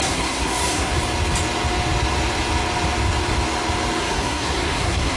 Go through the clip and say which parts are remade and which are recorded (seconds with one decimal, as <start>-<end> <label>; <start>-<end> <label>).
0.0-0.9 remade; 0.9-4.0 recorded; 4.0-5.2 remade

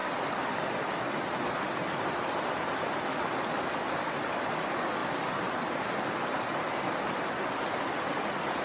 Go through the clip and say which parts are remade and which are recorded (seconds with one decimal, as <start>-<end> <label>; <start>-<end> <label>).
0.0-8.6 recorded

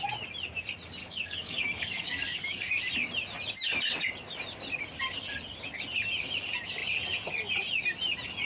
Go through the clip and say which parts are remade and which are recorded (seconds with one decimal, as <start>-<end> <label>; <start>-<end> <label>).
0.0-1.0 recorded; 1.0-2.8 remade; 2.8-8.5 recorded

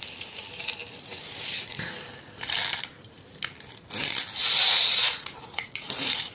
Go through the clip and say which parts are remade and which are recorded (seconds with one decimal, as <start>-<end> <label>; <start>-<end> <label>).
0.0-4.8 recorded; 4.8-6.3 remade

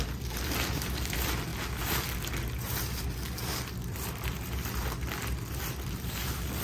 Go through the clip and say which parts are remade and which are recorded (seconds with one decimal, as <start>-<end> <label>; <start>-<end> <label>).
0.0-6.6 recorded

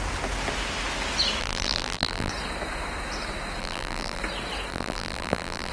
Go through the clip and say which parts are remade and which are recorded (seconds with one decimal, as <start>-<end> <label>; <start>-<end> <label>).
0.0-1.4 recorded; 1.4-2.3 remade; 2.3-3.6 recorded; 3.6-4.2 remade; 4.2-4.7 recorded; 4.7-5.7 remade

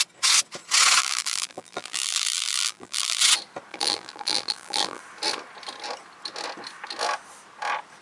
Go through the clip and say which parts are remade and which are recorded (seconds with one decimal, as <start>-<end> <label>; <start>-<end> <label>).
0.0-1.0 recorded; 1.0-3.2 remade; 3.2-3.7 recorded; 3.7-5.0 remade; 5.0-8.0 recorded

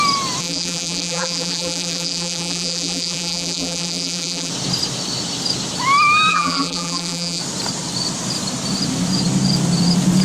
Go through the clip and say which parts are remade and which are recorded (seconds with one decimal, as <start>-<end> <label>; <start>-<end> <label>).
0.0-0.4 recorded; 0.4-4.5 remade; 4.5-6.3 recorded; 6.3-7.4 remade; 7.4-10.2 recorded